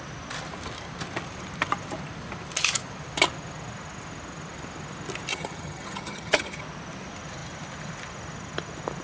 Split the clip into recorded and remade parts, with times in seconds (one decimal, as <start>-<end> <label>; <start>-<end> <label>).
0.0-5.3 recorded; 5.3-6.6 remade; 6.6-9.0 recorded